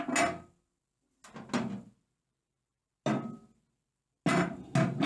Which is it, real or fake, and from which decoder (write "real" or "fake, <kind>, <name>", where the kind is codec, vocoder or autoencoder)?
real